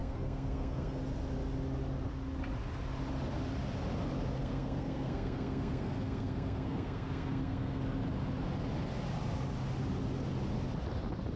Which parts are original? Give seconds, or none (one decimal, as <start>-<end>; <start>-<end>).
1.0-4.4; 7.8-11.4